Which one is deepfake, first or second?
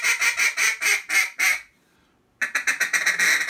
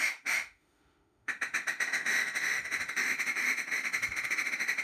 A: second